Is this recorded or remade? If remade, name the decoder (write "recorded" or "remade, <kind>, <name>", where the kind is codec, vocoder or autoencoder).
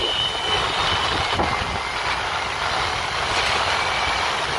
recorded